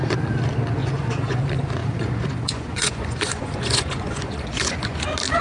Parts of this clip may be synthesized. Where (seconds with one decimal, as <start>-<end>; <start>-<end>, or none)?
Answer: 0.8-1.4; 1.8-5.0